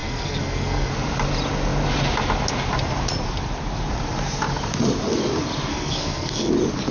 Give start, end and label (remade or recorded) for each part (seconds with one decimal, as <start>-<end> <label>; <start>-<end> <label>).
0.0-0.9 remade; 0.9-5.7 recorded; 5.7-6.5 remade; 6.5-6.9 recorded

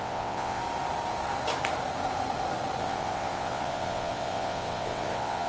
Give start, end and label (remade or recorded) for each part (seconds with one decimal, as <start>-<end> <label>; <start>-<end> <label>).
0.0-0.6 remade; 0.6-2.8 recorded; 2.8-5.5 remade